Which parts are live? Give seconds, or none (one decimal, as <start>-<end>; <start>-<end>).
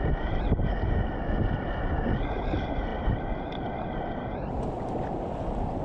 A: 0.0-5.8